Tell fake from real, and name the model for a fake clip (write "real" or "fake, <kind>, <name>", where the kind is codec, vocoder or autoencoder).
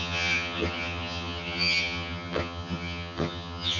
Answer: fake, vocoder, HiFi-GAN